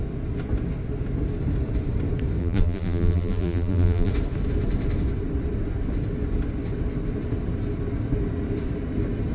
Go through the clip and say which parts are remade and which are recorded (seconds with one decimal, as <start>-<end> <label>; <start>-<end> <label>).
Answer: 0.0-2.4 recorded; 2.4-4.1 remade; 4.1-9.3 recorded